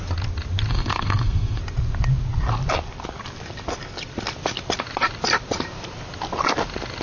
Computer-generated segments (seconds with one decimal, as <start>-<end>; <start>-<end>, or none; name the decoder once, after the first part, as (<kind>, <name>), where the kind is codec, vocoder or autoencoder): 0.7-1.6 (codec, SNAC)